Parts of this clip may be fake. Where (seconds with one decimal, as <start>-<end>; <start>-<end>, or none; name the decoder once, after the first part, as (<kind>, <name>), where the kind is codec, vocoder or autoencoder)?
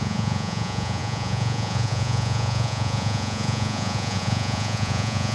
0.0-5.3 (vocoder, Vocos)